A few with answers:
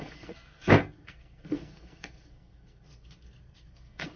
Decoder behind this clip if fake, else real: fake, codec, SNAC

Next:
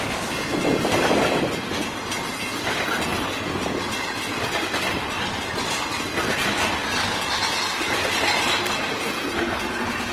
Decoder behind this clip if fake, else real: real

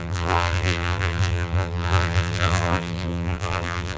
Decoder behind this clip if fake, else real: fake, vocoder, BigVGAN v2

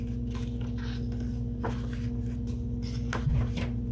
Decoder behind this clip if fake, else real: real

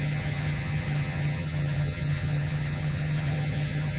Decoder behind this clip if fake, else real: fake, vocoder, HiFi-GAN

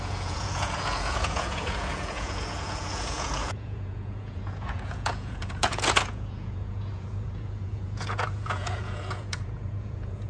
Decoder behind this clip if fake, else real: fake, vocoder, Vocos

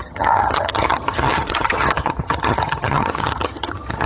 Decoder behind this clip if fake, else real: fake, vocoder, HiFi-GAN